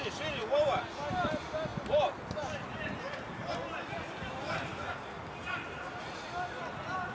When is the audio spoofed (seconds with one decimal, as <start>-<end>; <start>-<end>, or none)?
none